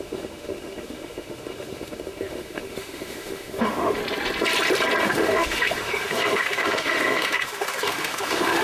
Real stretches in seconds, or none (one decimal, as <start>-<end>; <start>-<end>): 4.0-5.0